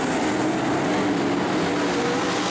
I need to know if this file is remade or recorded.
recorded